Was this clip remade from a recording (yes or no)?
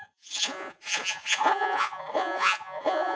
yes